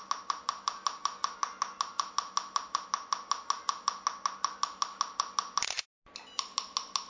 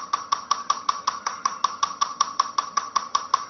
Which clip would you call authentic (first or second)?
first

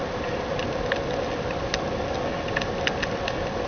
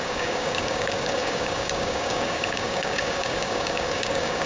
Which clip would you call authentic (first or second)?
first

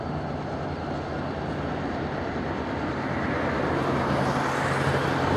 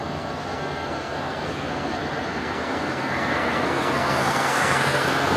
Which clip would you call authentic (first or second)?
first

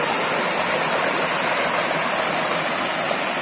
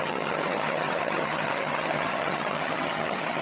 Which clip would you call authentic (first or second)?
first